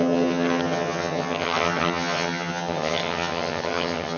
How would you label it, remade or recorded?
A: remade